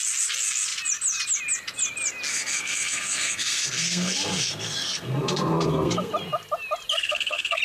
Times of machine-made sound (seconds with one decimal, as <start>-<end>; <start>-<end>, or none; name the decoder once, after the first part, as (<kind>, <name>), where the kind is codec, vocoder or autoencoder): 2.3-6.1 (codec, SNAC); 6.9-7.6